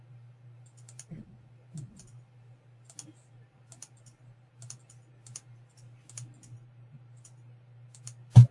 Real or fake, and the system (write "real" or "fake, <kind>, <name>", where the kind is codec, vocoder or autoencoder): real